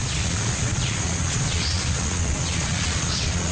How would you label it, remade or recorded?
remade